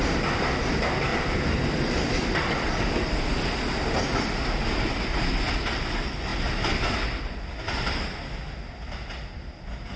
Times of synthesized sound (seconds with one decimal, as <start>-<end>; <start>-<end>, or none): 1.1-2.5